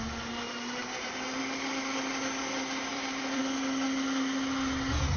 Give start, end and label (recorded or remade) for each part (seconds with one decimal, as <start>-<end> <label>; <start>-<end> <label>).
0.0-2.9 recorded; 2.9-3.4 remade; 3.4-5.2 recorded